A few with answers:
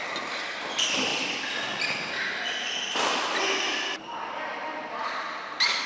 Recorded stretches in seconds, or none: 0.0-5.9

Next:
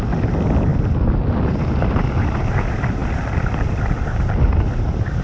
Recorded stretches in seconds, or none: 0.0-3.0

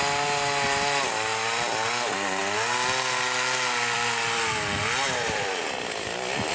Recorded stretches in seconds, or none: 0.0-6.5